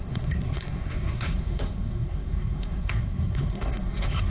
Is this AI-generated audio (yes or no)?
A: yes